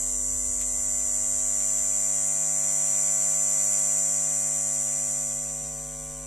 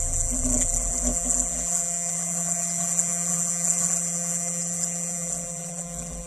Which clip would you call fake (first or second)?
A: second